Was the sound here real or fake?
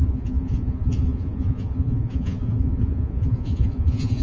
fake